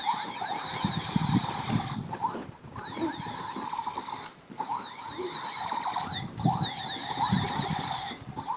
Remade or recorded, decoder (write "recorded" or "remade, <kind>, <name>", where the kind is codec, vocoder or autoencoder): recorded